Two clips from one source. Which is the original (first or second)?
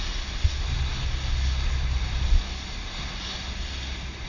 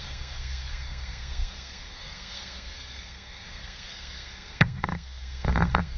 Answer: first